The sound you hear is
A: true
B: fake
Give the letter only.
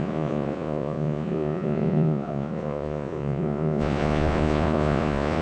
B